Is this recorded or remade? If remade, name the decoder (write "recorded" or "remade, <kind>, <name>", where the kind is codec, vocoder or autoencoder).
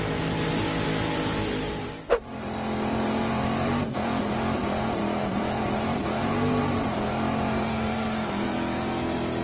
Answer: remade, vocoder, BigVGAN v2